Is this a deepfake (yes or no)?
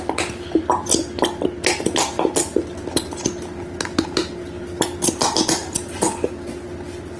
no